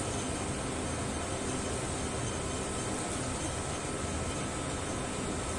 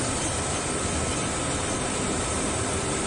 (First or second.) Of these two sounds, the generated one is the second